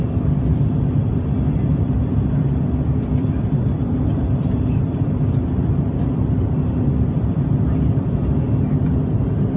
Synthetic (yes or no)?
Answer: yes